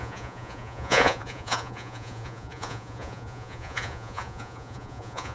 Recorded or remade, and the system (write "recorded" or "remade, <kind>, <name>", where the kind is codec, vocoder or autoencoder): remade, vocoder, Vocos